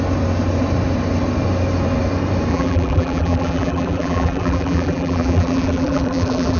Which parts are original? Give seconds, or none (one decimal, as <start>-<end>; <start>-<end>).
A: 0.0-2.5